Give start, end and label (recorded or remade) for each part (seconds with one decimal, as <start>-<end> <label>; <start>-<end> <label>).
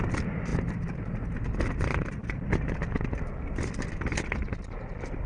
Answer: 0.0-5.3 recorded